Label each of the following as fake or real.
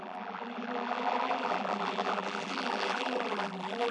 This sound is fake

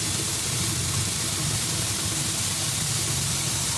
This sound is fake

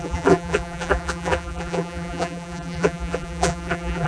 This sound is fake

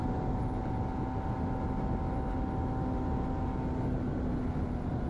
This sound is real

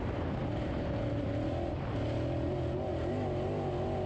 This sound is real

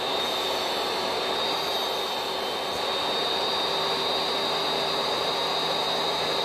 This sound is real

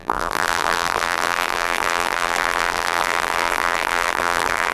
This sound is fake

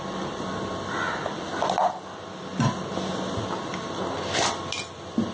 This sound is real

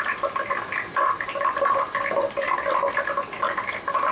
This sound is fake